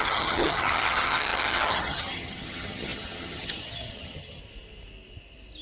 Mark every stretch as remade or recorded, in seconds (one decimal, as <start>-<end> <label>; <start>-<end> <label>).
0.0-4.4 remade; 4.4-5.6 recorded